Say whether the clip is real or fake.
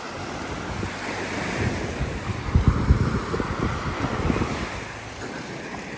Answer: real